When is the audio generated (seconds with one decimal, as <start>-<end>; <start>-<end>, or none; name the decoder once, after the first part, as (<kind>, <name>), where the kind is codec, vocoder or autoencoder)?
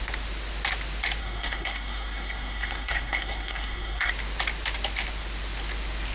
1.2-4.1 (codec, SNAC)